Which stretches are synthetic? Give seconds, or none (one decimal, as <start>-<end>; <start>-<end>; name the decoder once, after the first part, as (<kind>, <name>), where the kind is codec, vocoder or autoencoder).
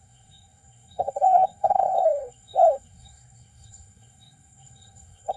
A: 0.0-5.4 (codec, SNAC)